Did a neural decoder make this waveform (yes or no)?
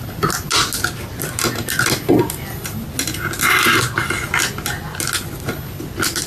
no